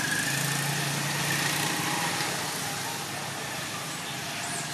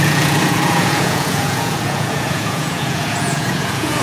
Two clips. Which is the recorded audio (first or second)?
first